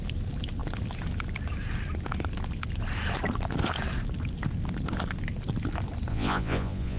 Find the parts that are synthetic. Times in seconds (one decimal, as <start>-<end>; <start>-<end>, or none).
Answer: 6.1-7.0